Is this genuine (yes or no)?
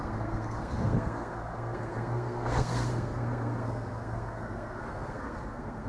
no